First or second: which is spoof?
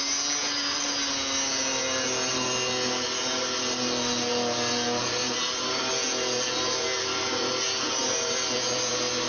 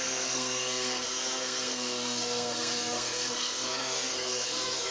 second